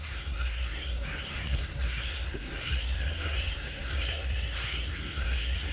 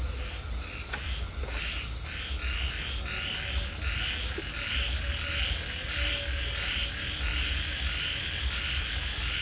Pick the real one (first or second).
second